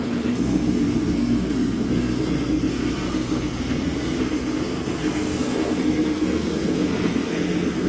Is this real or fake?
fake